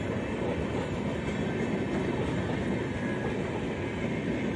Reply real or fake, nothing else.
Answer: real